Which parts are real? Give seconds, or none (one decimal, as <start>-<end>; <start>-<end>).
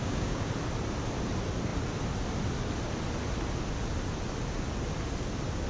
0.5-5.7